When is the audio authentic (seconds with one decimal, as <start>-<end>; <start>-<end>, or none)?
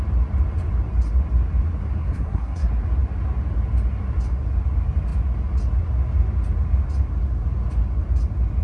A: 0.0-2.0; 2.7-8.6